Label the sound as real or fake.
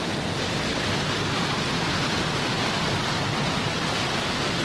real